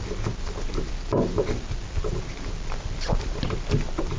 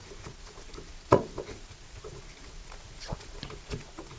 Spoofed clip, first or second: second